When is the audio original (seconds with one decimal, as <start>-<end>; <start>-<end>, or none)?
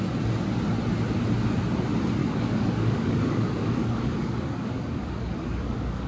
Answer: 0.0-2.2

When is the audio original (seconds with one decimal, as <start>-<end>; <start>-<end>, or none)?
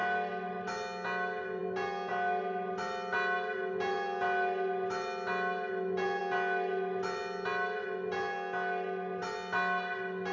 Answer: 0.0-10.3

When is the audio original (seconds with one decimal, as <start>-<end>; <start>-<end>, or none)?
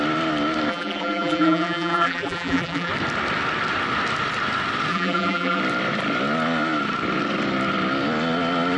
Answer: 0.0-0.7; 2.9-4.9; 5.6-8.8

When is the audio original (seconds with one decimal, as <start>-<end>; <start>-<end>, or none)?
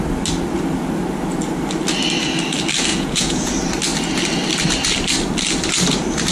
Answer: 0.0-2.9; 3.5-6.3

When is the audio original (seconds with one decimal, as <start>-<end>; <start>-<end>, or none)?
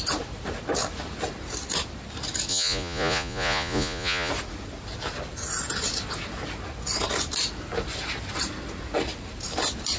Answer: 0.0-2.5; 4.3-10.0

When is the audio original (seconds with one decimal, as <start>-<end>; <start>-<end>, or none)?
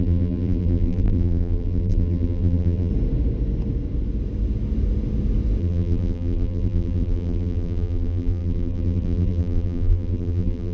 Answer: 2.9-5.6